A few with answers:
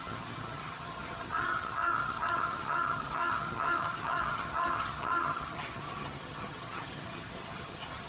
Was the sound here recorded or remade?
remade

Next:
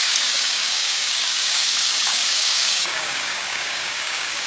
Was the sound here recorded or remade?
remade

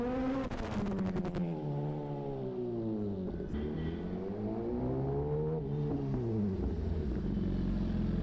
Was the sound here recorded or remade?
recorded